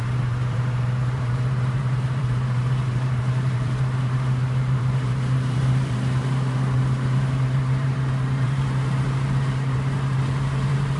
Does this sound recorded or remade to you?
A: remade